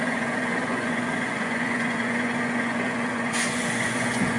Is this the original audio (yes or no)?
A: no